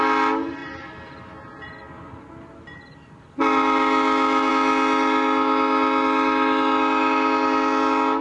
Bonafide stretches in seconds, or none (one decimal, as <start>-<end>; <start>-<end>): 0.0-8.2